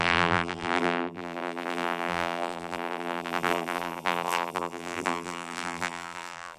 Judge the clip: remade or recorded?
remade